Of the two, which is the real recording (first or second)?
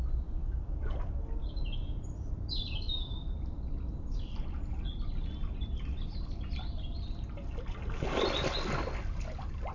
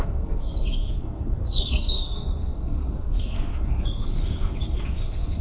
first